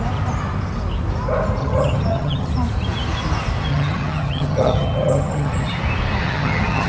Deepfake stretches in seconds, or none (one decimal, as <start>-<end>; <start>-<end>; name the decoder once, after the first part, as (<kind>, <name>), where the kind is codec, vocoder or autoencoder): 1.6-2.5 (vocoder, HiFi-GAN); 3.7-5.8; 6.2-6.9